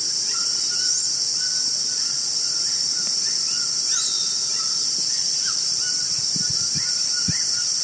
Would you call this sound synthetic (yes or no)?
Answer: no